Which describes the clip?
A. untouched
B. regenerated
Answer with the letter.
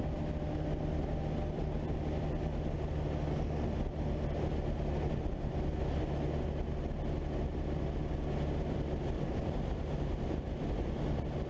A